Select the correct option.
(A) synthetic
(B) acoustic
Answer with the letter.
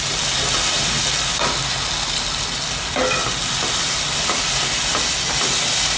B